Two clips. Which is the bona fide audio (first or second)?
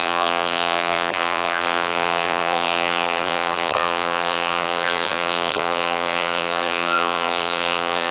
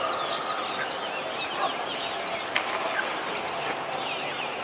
second